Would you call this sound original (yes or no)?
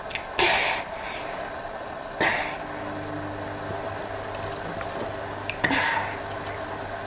yes